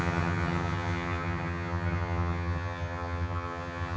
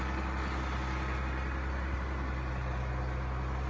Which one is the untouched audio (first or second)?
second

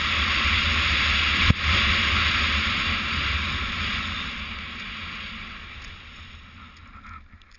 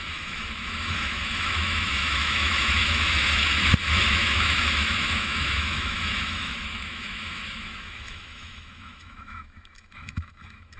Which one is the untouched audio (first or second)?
first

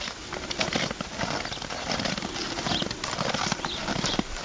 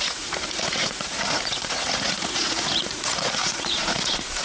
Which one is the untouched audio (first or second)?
first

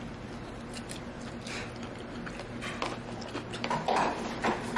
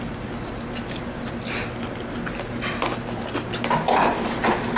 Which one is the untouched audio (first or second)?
second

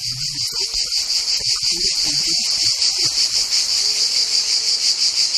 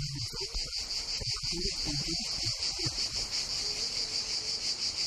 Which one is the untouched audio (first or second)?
second